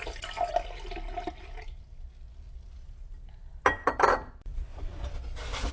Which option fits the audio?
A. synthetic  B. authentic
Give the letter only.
B